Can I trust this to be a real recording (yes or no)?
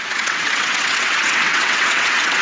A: no